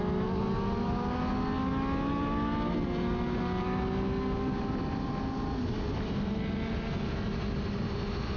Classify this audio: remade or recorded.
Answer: recorded